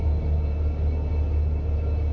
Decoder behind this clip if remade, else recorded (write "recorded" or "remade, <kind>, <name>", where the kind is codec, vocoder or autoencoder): recorded